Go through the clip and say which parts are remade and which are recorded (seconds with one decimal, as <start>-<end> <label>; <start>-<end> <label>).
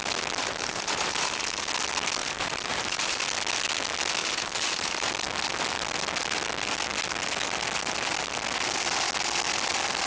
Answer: 0.0-0.4 recorded; 0.4-1.7 remade; 1.7-2.2 recorded; 2.2-3.2 remade; 3.2-4.2 recorded; 4.2-5.1 remade; 5.1-10.1 recorded